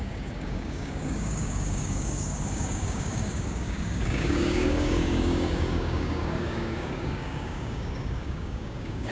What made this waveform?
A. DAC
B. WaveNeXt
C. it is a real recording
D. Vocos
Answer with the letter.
A